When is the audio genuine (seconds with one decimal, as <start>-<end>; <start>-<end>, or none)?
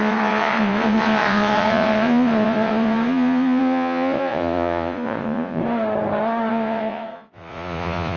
5.6-6.5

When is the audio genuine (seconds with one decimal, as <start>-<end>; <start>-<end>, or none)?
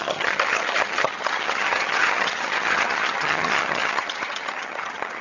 none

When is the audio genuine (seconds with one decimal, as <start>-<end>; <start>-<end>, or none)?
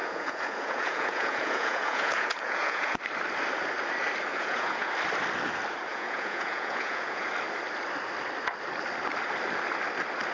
3.0-4.3; 4.9-5.9; 7.3-10.3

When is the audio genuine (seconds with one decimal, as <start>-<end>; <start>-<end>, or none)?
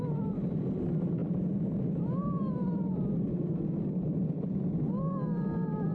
0.0-5.9